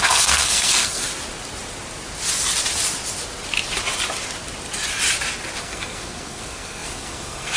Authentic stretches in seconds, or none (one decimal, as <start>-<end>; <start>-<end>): 1.1-5.6